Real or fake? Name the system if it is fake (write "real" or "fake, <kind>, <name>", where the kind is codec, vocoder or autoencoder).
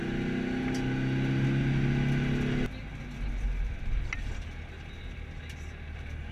real